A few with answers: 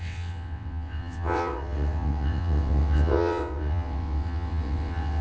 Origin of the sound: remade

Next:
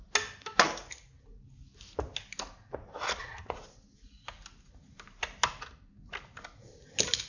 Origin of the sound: recorded